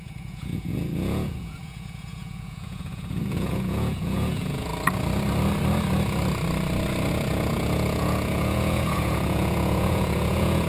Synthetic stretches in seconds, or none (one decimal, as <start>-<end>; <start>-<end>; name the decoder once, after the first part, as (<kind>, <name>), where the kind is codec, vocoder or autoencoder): 0.0-4.7 (vocoder, Vocos); 7.1-10.7